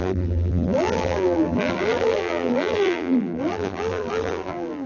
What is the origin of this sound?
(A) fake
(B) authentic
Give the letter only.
A